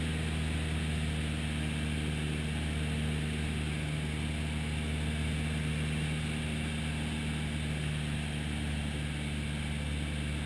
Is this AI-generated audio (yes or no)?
no